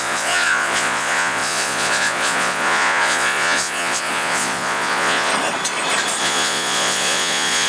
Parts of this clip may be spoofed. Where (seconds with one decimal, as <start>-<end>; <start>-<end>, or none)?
0.0-5.3; 6.2-7.7